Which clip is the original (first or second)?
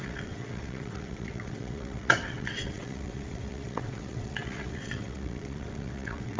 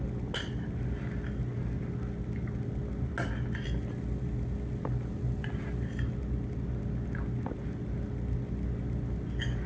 second